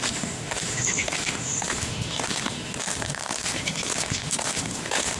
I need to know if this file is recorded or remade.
remade